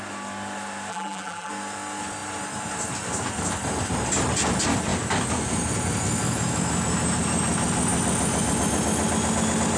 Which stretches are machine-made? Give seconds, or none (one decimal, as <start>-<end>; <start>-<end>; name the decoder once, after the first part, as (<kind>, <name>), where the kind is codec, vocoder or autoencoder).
0.9-1.5 (vocoder, BigVGAN v2)